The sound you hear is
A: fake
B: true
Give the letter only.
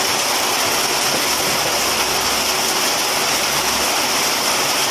B